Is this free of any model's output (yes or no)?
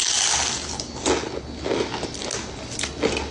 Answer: yes